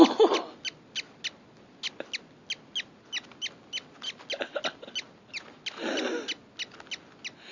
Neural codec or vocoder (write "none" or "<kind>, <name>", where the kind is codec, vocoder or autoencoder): none